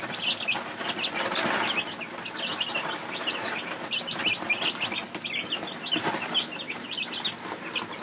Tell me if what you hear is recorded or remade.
recorded